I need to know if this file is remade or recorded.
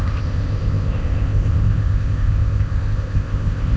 remade